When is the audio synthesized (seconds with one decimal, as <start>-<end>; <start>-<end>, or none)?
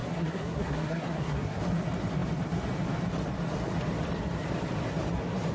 0.0-1.6